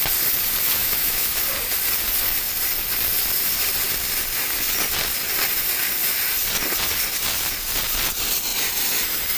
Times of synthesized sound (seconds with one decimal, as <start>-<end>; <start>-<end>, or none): 0.8-1.4